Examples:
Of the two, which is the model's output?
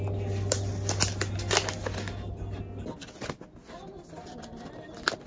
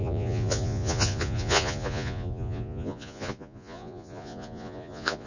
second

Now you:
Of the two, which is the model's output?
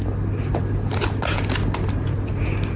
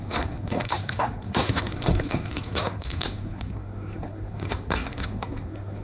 second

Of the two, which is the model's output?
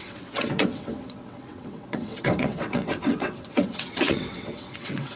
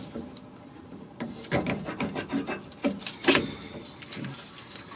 first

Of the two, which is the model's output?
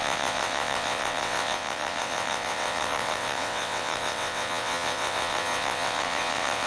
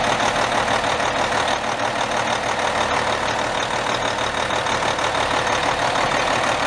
first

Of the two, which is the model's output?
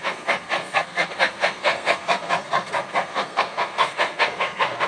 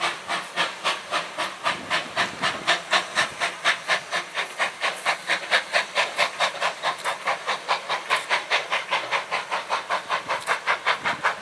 first